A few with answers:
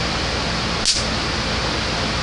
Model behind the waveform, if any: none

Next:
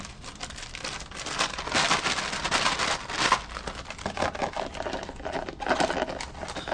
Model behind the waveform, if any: none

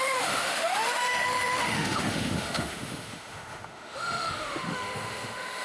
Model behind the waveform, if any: autoencoder, DAC-VAE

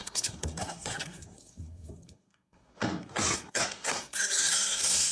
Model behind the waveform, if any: codec, SNAC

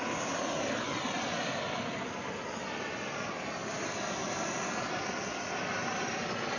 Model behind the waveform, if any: none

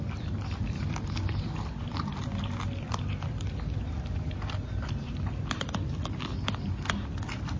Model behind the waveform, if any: none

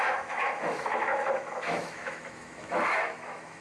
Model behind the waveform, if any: autoencoder, DAC-VAE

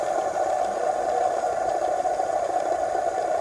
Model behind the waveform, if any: none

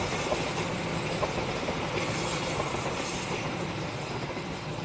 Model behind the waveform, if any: none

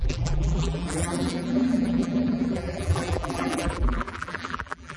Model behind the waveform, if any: vocoder, BigVGAN v2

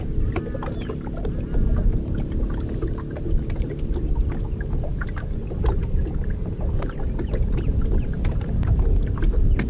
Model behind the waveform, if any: none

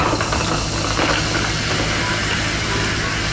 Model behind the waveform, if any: none